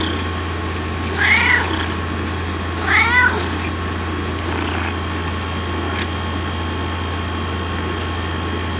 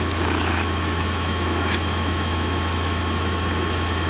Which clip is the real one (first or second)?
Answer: first